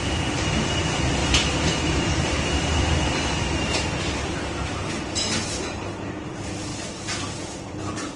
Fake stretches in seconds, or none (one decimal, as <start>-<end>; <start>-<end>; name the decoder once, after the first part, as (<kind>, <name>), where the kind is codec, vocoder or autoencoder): 1.2-2.7 (vocoder, BigVGAN v2); 4.2-4.9; 6.7-7.7